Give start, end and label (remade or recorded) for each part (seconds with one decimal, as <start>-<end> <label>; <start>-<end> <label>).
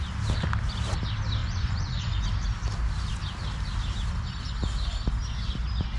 0.0-1.4 recorded; 1.4-2.2 remade; 2.2-6.0 recorded